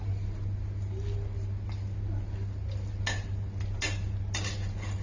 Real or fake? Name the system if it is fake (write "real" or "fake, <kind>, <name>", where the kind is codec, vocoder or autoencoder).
real